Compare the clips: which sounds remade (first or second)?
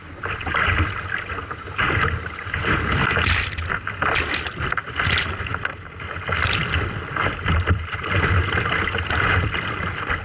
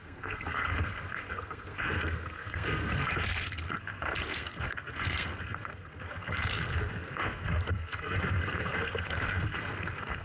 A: second